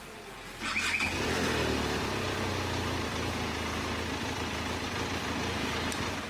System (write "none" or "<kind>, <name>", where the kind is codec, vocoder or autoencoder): none